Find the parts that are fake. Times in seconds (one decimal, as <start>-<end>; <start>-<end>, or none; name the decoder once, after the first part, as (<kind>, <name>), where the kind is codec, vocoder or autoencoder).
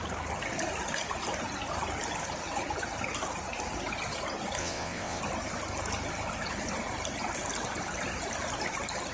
4.6-5.2 (vocoder, WaveNeXt)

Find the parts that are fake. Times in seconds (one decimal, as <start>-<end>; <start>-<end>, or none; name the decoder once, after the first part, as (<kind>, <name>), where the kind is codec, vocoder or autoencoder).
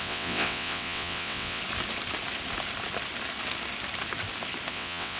0.0-1.6 (vocoder, WaveNeXt); 4.7-5.2